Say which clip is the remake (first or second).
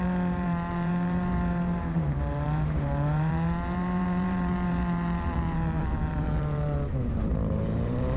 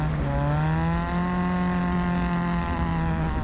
first